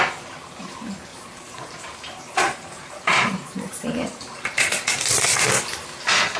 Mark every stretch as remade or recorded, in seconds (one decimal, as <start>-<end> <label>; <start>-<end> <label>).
0.0-1.1 recorded; 1.1-4.7 remade; 4.7-6.4 recorded